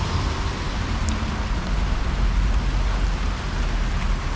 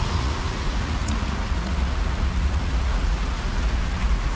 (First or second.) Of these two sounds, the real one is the first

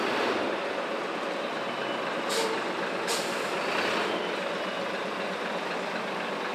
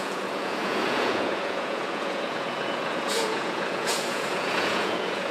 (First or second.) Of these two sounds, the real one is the first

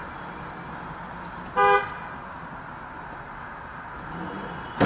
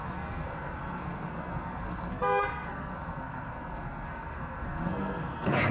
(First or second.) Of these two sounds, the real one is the first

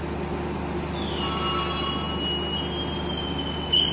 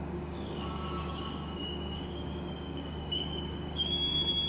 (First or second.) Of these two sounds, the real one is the first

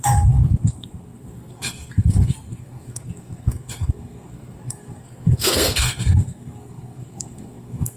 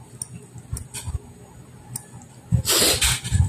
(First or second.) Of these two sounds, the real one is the second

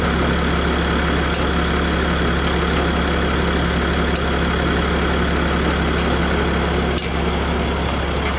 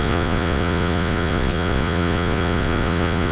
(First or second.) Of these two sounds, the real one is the first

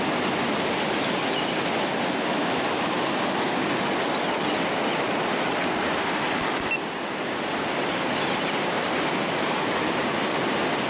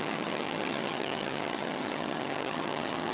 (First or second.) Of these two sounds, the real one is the first